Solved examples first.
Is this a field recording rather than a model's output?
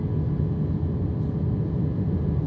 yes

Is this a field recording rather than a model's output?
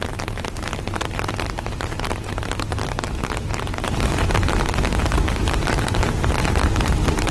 no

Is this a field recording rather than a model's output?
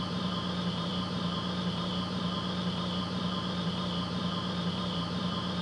no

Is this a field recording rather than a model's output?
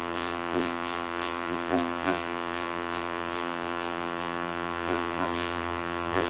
no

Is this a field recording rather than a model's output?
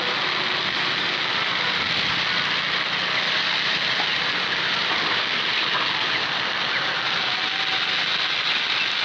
yes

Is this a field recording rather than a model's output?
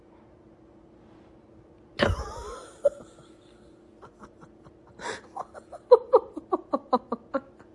yes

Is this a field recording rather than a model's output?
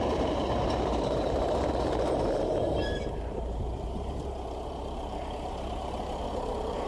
no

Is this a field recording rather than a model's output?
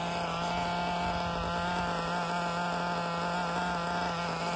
yes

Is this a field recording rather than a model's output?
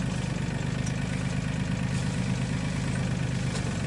yes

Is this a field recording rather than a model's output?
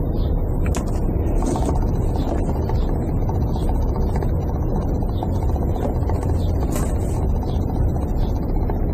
yes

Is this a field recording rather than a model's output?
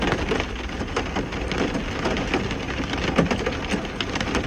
yes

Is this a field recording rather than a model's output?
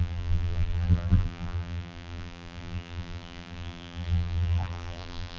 no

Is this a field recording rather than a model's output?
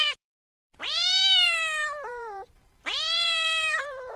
no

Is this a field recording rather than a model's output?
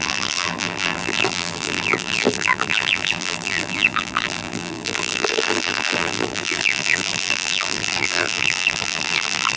no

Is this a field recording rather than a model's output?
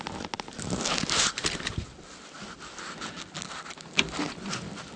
yes